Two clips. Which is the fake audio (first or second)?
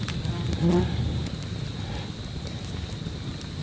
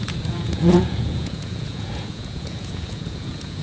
second